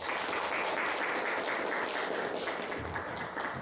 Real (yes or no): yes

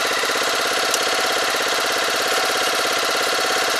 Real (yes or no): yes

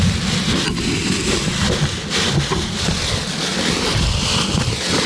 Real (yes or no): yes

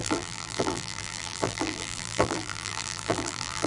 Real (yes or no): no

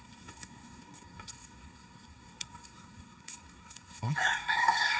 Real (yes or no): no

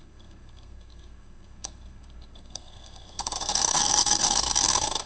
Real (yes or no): no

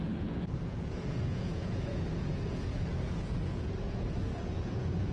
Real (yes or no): no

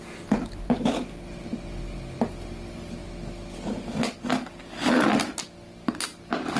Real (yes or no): yes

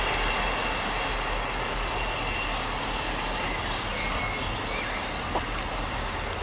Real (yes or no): yes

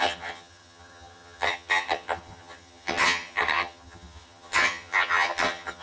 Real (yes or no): no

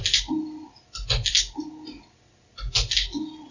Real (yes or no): yes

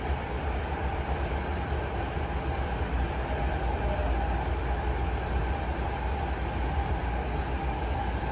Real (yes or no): yes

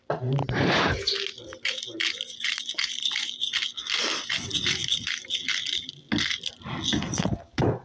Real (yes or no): yes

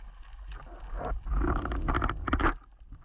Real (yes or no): yes